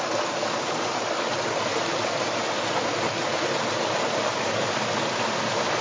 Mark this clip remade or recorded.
recorded